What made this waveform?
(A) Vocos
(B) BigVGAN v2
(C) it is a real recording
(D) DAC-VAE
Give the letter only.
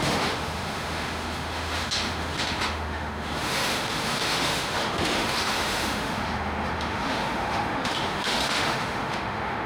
D